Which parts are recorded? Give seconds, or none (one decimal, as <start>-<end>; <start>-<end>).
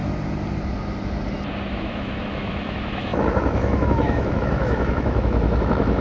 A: 0.0-1.7